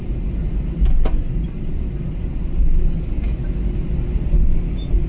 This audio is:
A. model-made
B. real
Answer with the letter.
B